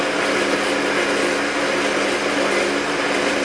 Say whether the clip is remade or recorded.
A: recorded